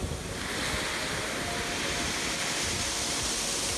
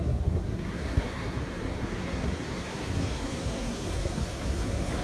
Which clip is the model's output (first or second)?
second